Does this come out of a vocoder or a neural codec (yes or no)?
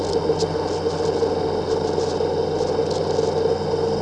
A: no